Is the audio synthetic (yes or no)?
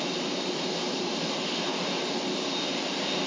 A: no